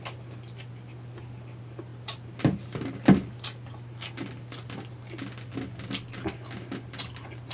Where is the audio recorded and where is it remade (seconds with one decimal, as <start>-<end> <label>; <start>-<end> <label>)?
0.0-7.5 recorded